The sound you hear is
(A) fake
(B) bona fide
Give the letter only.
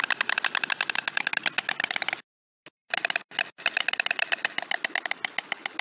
B